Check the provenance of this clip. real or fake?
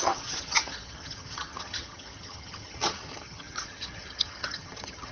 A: fake